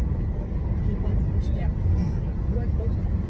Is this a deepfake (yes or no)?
no